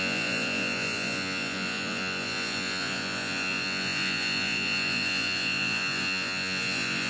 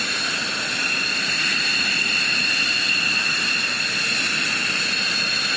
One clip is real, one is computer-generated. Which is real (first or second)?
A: second